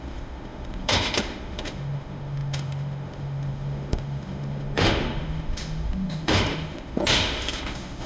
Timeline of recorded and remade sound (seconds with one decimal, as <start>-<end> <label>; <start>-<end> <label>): 0.0-8.1 remade